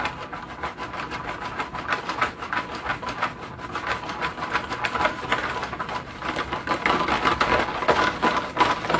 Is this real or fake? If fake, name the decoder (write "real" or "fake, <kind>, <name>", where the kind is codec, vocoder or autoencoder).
fake, vocoder, BigVGAN v2